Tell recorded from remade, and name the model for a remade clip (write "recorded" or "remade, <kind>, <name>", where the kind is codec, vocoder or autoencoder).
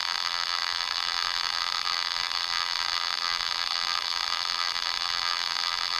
remade, vocoder, BigVGAN v2